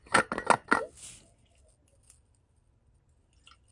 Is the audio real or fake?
real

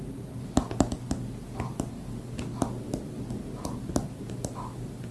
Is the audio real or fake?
real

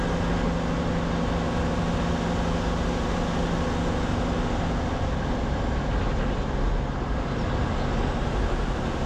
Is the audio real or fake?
real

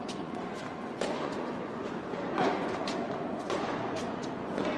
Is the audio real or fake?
fake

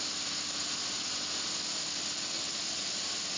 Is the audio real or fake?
real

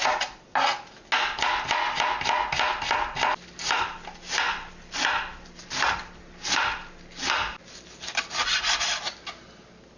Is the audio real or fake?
real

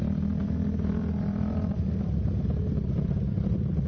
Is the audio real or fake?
real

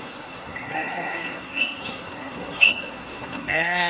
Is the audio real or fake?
fake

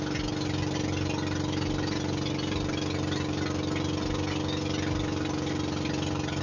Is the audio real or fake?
real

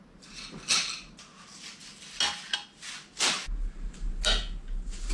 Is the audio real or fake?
real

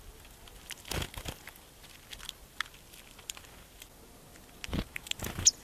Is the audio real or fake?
real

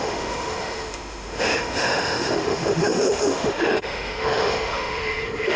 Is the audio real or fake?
fake